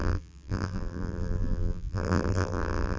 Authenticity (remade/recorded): remade